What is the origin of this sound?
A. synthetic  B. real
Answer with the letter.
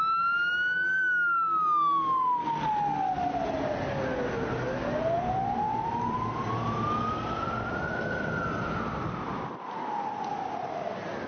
B